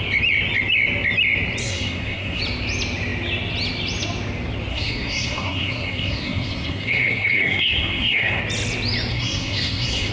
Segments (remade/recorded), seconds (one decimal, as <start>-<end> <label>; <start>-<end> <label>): 0.0-1.6 recorded; 1.6-2.4 remade; 2.4-4.7 recorded; 4.7-8.4 remade; 8.4-9.1 recorded; 9.1-10.1 remade